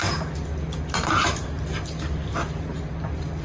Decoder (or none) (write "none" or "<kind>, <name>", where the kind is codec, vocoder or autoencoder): none